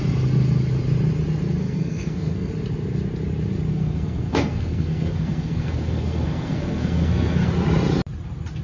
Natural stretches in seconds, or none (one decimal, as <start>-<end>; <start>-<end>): 0.0-1.6; 2.5-3.7; 7.5-8.6